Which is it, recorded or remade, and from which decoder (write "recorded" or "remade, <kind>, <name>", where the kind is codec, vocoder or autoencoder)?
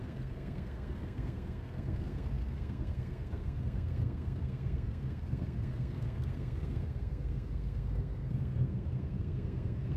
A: remade, codec, SNAC